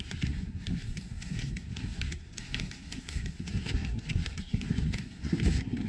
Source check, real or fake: fake